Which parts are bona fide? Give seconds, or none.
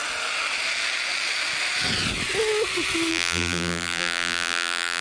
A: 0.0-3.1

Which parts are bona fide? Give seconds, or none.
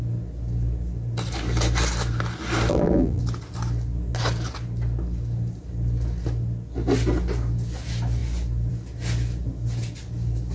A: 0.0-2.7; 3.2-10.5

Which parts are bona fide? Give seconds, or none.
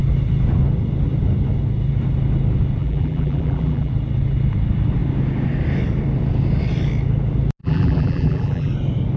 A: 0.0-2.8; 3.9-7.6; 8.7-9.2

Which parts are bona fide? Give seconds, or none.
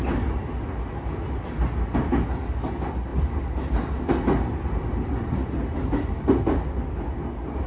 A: 0.0-7.7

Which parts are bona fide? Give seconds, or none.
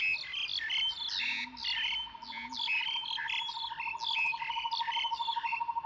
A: 0.0-5.3